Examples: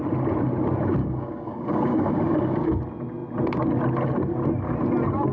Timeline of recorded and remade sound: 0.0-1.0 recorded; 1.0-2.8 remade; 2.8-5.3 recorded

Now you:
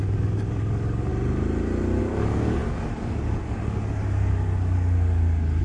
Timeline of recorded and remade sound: 0.0-1.1 remade; 1.1-2.0 recorded; 2.0-5.6 remade